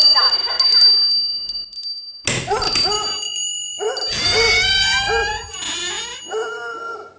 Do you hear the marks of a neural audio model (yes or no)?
no